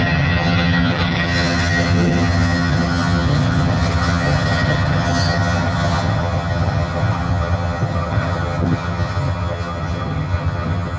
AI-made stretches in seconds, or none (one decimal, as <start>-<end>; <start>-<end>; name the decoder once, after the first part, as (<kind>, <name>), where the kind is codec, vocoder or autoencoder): 0.0-11.0 (vocoder, HiFi-GAN)